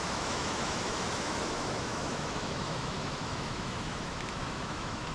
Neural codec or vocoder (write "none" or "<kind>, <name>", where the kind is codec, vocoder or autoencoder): autoencoder, DAC-VAE